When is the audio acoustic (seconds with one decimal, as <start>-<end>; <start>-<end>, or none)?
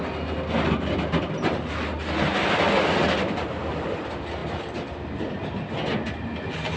0.0-6.8